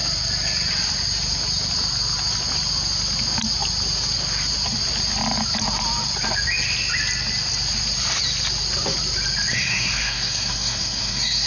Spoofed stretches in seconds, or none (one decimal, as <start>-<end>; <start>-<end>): 9.5-11.5